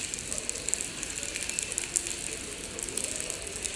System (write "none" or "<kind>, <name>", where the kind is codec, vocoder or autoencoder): none